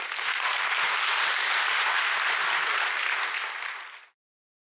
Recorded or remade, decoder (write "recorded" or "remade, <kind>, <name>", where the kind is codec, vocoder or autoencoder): recorded